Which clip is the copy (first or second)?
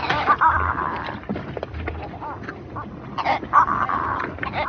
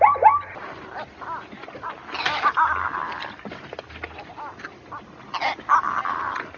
first